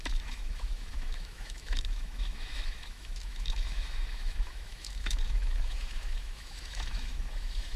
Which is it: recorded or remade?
remade